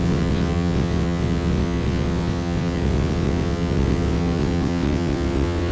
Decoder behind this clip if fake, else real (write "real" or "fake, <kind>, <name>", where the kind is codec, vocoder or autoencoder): fake, vocoder, WaveNeXt